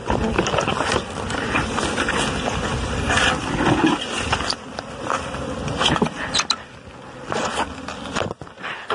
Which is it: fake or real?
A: real